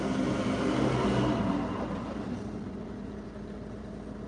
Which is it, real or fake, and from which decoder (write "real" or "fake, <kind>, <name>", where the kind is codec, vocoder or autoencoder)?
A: real